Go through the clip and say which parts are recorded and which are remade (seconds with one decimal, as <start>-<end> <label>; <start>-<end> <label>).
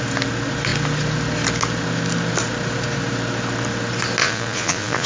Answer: 0.0-4.2 recorded; 4.2-5.1 remade